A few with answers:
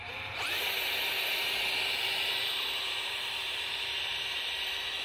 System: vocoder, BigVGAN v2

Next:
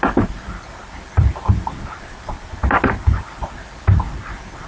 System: vocoder, BigVGAN v2